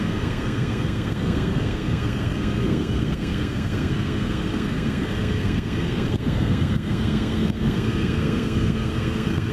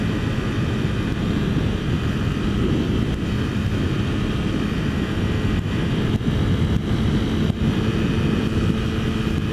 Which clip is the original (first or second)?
second